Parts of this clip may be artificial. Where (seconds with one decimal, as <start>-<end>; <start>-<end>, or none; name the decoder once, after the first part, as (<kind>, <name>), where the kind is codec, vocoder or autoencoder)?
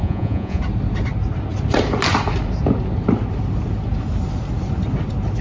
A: 0.0-0.6 (vocoder, Vocos)